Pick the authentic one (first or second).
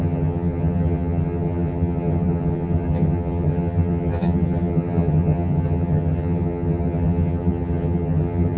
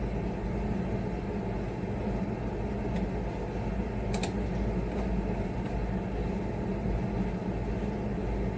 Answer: second